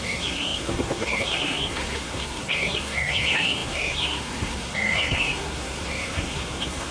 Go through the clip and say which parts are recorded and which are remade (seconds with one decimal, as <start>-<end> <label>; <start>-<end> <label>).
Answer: 0.0-6.9 remade